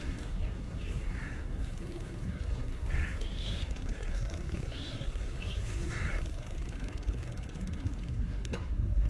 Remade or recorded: remade